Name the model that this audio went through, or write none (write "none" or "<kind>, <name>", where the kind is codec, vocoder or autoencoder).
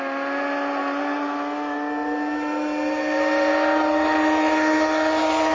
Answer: none